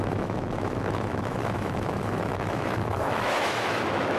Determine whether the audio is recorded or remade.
remade